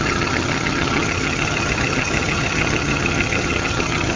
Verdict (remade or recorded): remade